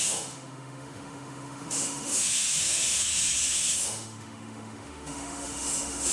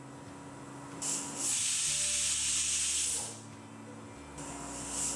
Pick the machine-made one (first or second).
first